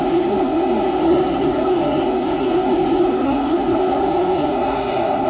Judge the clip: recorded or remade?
remade